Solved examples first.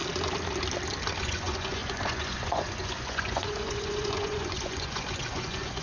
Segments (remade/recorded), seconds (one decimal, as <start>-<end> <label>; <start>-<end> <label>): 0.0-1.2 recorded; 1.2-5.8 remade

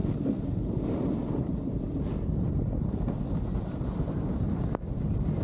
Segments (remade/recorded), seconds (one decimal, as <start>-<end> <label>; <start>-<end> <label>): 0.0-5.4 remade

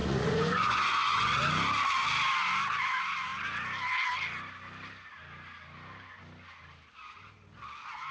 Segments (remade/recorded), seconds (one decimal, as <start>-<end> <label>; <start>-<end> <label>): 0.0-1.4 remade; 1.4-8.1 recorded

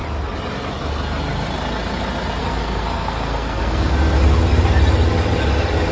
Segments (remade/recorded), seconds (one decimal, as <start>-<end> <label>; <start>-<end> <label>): 0.0-2.4 recorded; 2.4-3.9 remade; 3.9-5.9 recorded

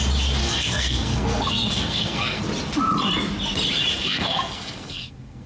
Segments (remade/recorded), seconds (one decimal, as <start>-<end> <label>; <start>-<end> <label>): 0.0-0.4 recorded; 0.4-2.4 remade; 2.4-3.9 recorded; 3.9-5.5 remade

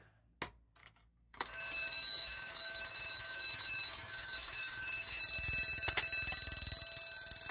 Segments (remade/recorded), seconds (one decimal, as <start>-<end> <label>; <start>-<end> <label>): 0.0-0.8 recorded; 0.8-5.2 remade; 5.2-7.5 recorded

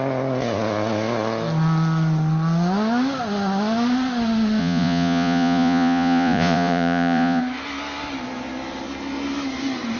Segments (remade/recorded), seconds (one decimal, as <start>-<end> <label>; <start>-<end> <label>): 0.0-4.6 recorded; 4.6-7.4 remade; 7.4-10.0 recorded